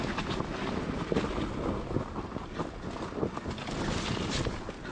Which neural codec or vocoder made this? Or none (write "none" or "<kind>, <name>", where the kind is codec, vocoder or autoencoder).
none